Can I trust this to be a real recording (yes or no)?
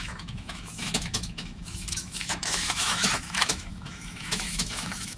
no